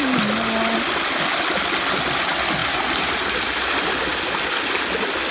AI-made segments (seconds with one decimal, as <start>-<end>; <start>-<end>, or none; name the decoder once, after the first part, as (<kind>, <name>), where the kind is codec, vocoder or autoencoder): 2.6-3.5 (vocoder, BigVGAN v2)